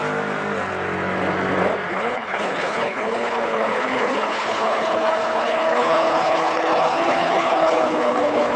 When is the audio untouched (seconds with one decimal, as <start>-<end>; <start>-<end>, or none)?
0.0-1.9